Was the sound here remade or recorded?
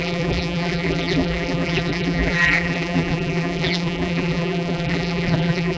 remade